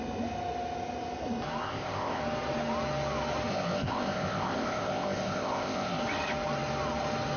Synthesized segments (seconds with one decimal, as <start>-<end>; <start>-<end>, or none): 1.6-2.2; 3.5-6.0